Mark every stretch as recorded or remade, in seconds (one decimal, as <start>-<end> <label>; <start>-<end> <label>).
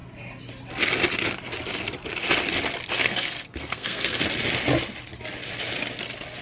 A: 0.0-3.0 recorded; 3.0-4.2 remade; 4.2-6.4 recorded